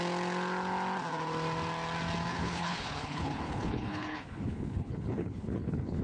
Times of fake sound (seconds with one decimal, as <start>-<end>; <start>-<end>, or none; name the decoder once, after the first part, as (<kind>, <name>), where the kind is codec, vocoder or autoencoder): 2.3-6.0 (codec, HILCodec)